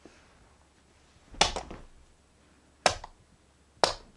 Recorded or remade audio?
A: recorded